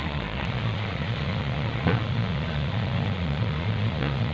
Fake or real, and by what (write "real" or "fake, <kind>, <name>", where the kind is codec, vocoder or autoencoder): fake, vocoder, Vocos